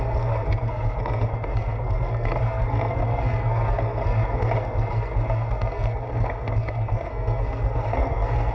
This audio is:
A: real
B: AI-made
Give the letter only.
B